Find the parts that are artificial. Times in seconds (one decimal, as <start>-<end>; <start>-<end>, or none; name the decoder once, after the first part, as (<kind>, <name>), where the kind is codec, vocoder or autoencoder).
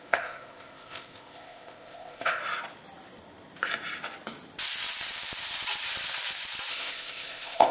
0.0-2.4 (codec, ZipCodec); 6.7-7.7